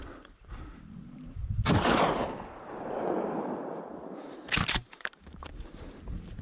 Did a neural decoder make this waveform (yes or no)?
yes